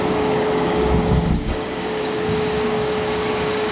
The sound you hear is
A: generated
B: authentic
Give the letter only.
A